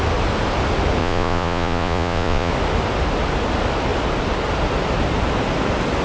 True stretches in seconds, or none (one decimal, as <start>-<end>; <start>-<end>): 0.0-1.0; 2.5-6.0